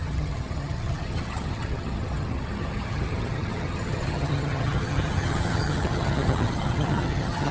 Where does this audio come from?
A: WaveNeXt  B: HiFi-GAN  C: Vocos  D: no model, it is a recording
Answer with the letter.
B